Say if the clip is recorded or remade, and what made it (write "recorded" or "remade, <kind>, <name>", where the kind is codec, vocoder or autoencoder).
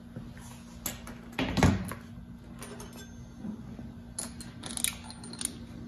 recorded